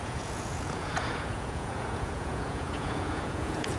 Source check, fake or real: fake